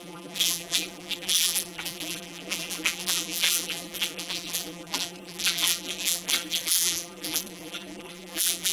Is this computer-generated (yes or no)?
yes